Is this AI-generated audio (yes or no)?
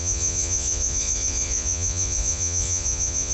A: yes